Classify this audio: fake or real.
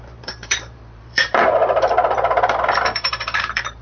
fake